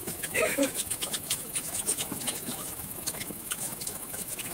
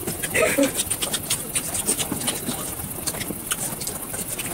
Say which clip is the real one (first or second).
second